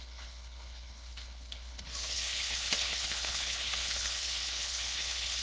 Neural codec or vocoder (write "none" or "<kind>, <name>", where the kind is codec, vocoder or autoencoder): codec, HILCodec